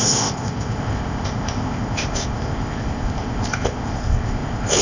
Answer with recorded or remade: remade